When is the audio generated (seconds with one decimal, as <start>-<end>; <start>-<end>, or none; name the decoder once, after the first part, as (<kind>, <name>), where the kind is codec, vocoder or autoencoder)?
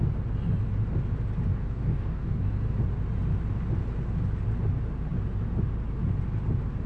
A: 1.5-2.4 (codec, DAC)